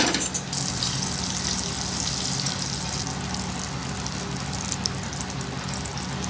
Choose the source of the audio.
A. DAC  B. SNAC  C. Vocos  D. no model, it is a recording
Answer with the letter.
D